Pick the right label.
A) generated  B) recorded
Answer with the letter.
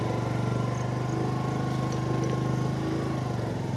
B